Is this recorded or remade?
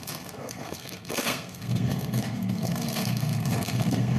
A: remade